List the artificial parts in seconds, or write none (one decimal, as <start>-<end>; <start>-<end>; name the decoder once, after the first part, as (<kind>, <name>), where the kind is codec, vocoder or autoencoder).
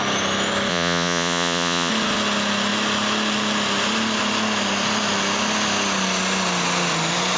0.7-1.9 (vocoder, Vocos)